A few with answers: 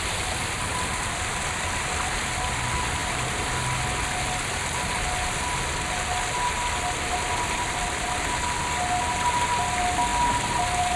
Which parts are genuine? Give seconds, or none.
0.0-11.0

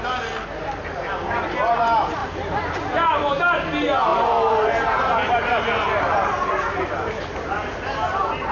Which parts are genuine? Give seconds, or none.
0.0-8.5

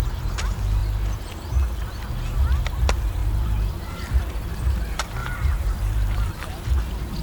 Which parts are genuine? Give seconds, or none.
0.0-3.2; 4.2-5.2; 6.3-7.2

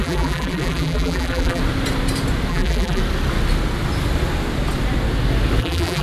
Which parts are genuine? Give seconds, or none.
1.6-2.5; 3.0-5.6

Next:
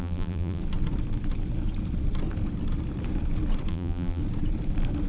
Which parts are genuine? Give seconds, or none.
0.6-3.7; 4.2-5.1

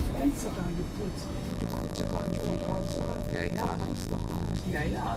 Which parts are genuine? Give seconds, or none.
0.0-1.5; 4.6-5.2

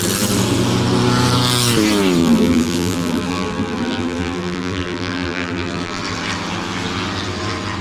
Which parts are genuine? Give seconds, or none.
0.0-2.2; 6.0-7.8

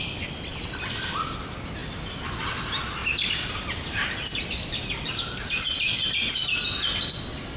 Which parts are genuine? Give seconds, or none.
0.0-3.0; 5.1-7.6